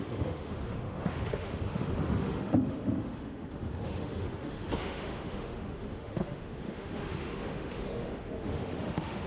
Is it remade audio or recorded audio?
remade